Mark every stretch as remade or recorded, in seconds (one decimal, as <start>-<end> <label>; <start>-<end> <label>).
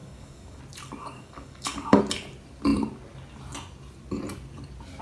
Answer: 0.0-0.6 remade; 0.6-1.0 recorded; 1.0-2.0 remade; 2.0-5.0 recorded